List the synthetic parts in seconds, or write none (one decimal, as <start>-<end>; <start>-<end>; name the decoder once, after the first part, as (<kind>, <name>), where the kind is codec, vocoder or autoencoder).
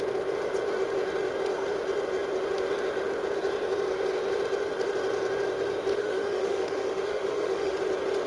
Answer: 5.9-7.7 (autoencoder, DAC-VAE)